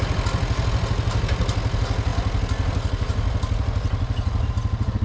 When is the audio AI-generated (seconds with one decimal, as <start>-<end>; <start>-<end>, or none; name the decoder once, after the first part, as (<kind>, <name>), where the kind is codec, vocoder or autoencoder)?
none